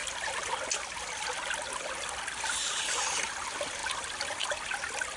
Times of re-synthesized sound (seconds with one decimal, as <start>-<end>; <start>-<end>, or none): 3.8-4.7